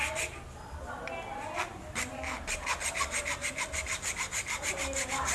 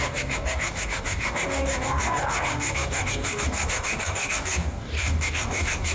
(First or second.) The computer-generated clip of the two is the second